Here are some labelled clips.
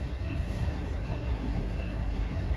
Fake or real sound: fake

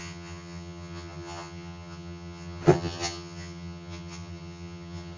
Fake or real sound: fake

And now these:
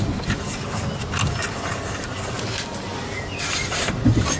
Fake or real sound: real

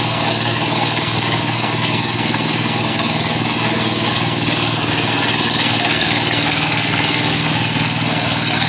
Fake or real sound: fake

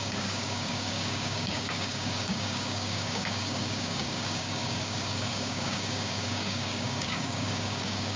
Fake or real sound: fake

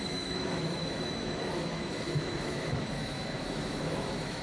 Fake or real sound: fake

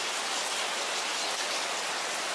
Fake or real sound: real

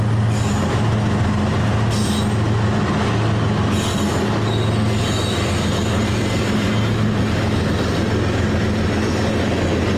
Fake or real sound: real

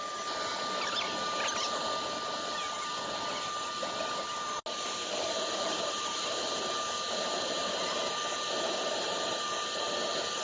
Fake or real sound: real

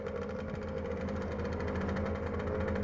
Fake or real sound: real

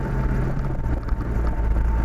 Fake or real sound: real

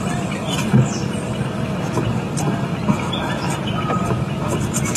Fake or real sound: real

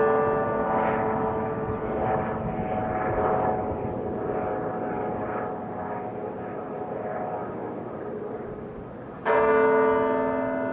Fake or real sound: real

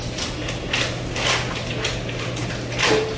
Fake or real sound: real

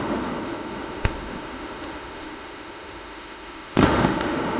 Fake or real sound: fake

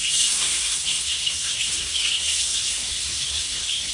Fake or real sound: fake